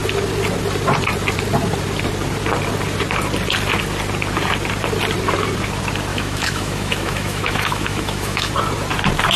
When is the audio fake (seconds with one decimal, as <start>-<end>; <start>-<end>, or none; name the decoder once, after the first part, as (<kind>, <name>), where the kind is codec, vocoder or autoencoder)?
6.1-8.5 (autoencoder, DAC-VAE)